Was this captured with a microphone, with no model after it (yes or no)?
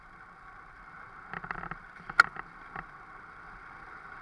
yes